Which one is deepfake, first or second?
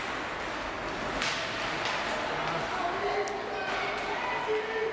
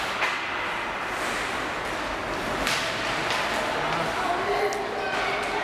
second